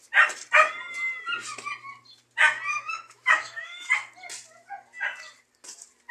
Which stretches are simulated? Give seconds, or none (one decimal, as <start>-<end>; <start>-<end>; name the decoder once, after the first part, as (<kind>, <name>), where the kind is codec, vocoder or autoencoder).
2.7-3.9 (autoencoder, DAC-VAE)